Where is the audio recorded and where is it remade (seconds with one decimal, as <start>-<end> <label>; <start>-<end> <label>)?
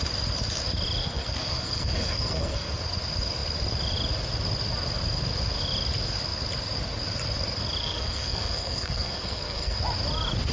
0.0-1.0 recorded; 1.0-2.7 remade; 2.7-7.8 recorded; 7.8-9.8 remade; 9.8-10.5 recorded